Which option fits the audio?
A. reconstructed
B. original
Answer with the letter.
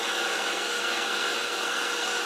A